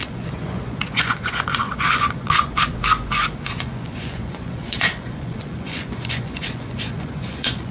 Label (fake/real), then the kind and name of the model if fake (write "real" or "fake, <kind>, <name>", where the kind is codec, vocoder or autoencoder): fake, vocoder, Vocos